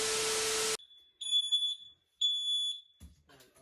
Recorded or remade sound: recorded